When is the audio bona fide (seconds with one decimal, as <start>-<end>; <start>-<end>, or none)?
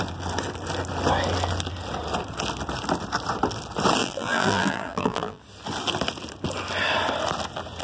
0.0-4.0; 5.4-7.8